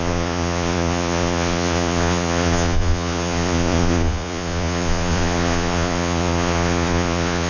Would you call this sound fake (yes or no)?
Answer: yes